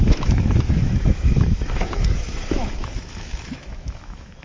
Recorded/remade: remade